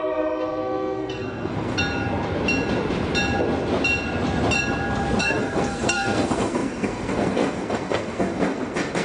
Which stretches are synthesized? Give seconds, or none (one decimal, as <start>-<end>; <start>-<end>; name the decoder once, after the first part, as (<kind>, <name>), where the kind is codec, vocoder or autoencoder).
0.0-1.8 (codec, SNAC); 5.2-9.0